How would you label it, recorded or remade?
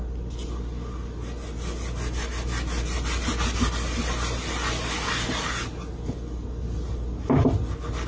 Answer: recorded